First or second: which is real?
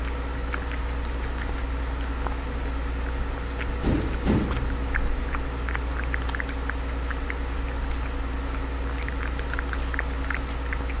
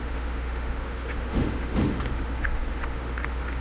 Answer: first